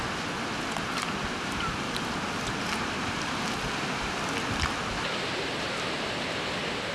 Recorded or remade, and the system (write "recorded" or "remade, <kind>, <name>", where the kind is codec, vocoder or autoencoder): recorded